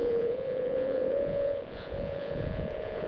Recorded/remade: remade